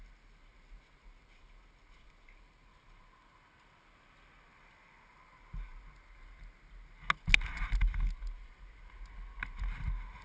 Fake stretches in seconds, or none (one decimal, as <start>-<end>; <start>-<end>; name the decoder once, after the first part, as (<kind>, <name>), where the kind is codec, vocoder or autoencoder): none